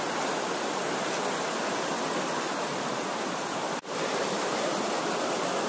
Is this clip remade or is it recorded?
recorded